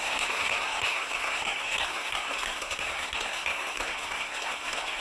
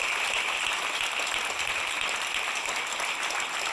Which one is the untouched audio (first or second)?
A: second